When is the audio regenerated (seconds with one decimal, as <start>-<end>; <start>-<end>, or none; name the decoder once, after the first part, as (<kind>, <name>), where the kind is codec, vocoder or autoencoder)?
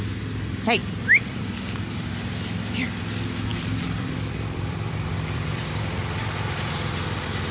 0.8-2.1 (vocoder, BigVGAN v2); 3.5-6.9